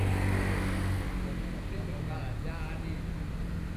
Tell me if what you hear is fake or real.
real